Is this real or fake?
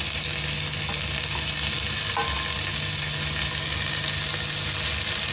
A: real